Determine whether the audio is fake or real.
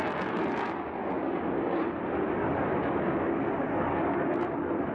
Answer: real